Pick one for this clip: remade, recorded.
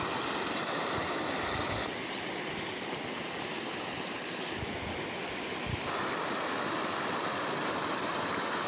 recorded